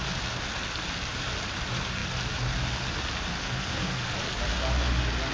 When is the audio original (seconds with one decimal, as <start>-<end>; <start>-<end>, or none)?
0.0-3.4; 4.0-5.3